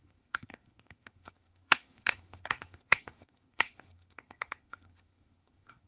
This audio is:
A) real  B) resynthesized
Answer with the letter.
B